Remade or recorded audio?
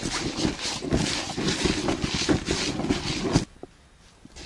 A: recorded